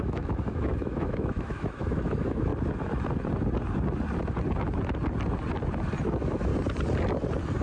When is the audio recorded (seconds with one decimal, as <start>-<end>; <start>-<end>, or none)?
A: 2.5-6.0; 6.5-7.6